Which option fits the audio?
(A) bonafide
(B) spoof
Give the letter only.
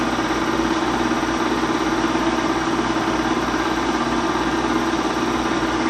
A